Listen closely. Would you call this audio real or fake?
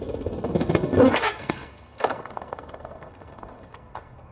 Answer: fake